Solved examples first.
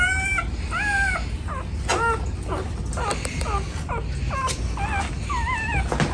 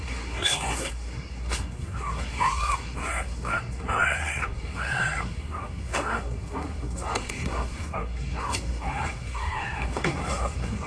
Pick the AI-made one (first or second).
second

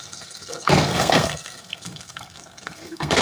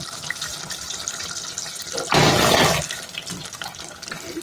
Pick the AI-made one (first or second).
first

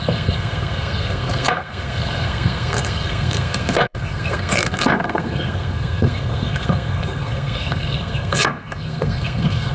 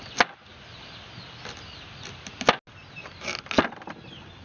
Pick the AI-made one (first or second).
first